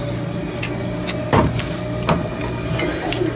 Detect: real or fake real